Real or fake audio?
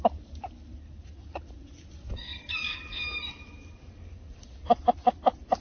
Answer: real